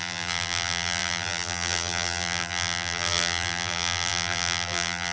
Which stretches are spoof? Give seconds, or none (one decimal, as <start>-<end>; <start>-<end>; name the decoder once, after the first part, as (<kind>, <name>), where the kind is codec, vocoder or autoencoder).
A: 0.0-5.1 (vocoder, BigVGAN v2)